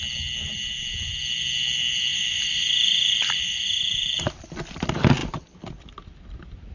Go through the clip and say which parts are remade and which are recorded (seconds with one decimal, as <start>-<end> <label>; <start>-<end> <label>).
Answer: 0.0-2.1 recorded; 2.1-4.3 remade; 4.3-6.7 recorded

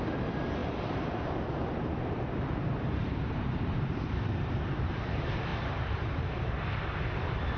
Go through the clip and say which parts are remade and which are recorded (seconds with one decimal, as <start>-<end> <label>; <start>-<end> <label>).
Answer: 0.0-0.6 recorded; 0.6-5.1 remade; 5.1-5.5 recorded; 5.5-6.5 remade; 6.5-7.6 recorded

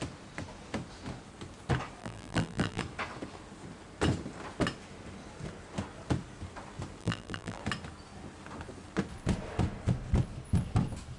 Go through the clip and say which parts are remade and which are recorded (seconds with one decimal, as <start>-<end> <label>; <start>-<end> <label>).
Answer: 0.0-2.0 recorded; 2.0-2.8 remade; 2.8-7.0 recorded; 7.0-7.6 remade; 7.6-11.2 recorded

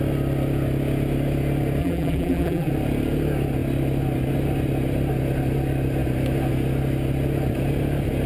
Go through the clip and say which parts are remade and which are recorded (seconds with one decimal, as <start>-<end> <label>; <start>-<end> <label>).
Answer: 0.0-1.8 recorded; 1.8-2.7 remade; 2.7-8.3 recorded

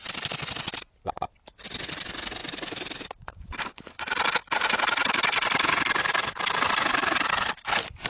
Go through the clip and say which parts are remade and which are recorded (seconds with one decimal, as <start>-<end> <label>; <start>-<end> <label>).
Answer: 0.0-8.1 recorded

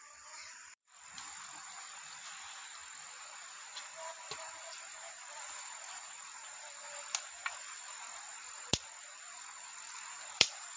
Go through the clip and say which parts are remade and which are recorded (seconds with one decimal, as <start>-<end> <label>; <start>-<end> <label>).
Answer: 0.0-10.8 remade

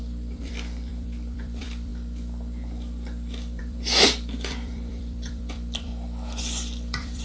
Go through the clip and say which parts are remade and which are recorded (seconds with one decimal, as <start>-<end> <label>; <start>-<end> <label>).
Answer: 0.0-1.9 remade; 1.9-3.6 recorded; 3.6-5.9 remade; 5.9-6.4 recorded; 6.4-7.2 remade